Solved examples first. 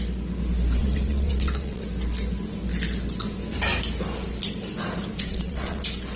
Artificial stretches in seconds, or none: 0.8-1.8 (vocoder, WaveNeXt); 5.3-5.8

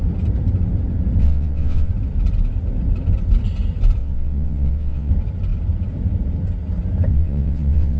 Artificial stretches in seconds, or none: 1.2-1.9 (vocoder, WaveNeXt); 4.0-5.1; 7.1-8.0

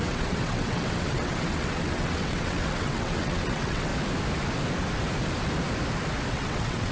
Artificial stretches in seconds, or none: 0.0-3.9 (vocoder, WaveNeXt); 6.3-6.9

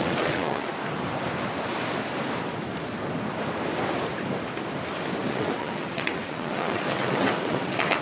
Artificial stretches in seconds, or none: 0.0-0.7 (vocoder, WaveNeXt); 5.3-8.0